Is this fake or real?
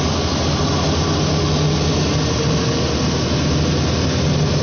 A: real